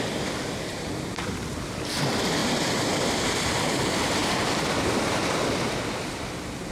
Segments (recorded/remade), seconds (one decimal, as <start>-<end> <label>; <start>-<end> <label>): 0.0-0.7 recorded; 0.7-1.9 remade; 1.9-2.4 recorded; 2.4-3.1 remade; 3.1-4.2 recorded; 4.2-5.2 remade; 5.2-6.7 recorded